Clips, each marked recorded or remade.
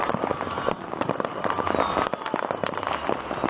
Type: recorded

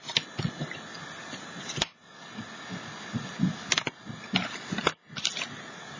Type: recorded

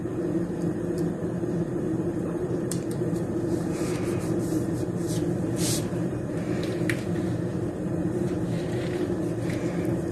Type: remade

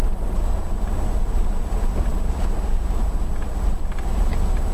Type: recorded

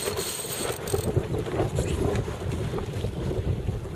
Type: remade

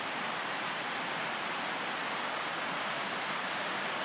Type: remade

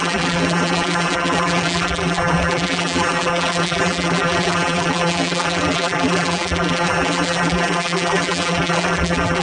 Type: remade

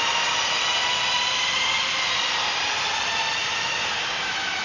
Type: recorded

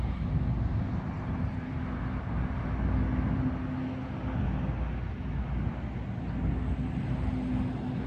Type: recorded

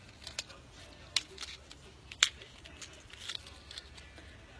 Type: recorded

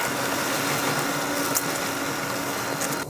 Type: recorded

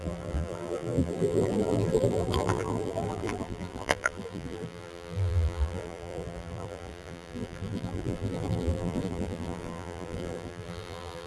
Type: remade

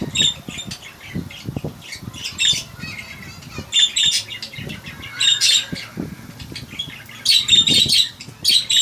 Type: recorded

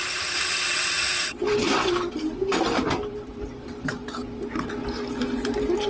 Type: remade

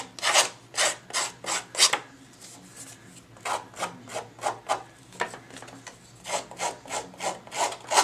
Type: recorded